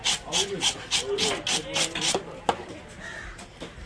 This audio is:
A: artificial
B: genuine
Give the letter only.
B